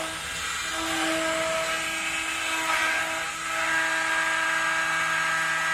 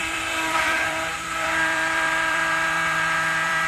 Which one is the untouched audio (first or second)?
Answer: first